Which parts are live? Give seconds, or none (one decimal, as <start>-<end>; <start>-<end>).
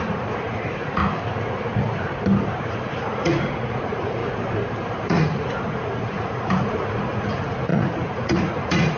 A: 1.0-2.7; 4.2-5.0